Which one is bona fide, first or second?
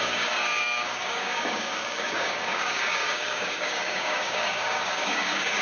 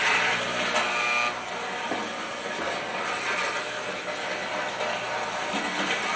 second